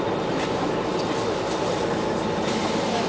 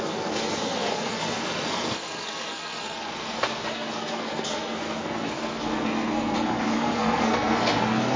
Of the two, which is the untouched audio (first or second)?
first